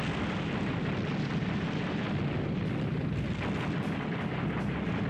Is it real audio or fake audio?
real